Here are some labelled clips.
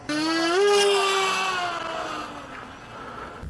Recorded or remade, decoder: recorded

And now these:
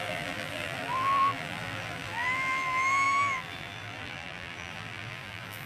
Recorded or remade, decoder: remade, vocoder, BigVGAN v2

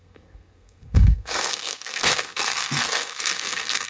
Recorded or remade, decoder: remade, codec, SNAC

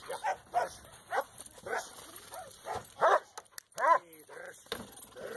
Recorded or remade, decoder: recorded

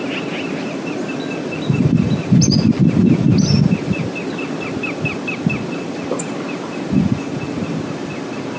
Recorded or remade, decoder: recorded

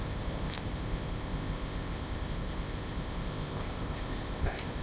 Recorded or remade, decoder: remade, codec, ZipCodec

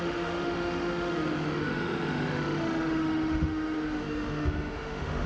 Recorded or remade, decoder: remade, autoencoder, DAC-VAE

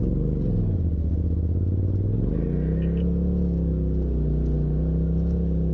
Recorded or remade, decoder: recorded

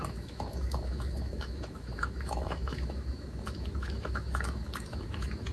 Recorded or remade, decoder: remade, autoencoder, DAC-VAE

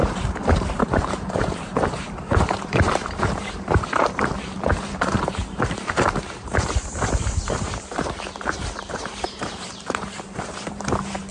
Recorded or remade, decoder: remade, vocoder, BigVGAN v2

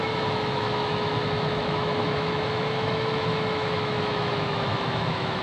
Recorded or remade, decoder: remade, autoencoder, DAC-VAE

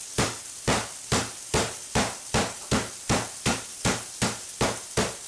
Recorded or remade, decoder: recorded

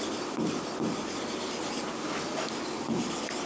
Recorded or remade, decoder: recorded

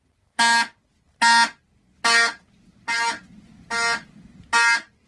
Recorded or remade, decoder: recorded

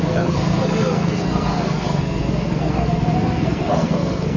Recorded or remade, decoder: remade, codec, SNAC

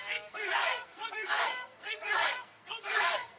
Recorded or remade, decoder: remade, codec, SNAC